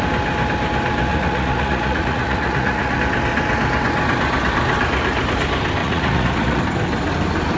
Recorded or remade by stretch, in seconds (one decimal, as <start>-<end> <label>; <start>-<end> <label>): 0.0-1.1 recorded; 1.1-3.0 remade; 3.0-5.8 recorded; 5.8-6.6 remade; 6.6-7.6 recorded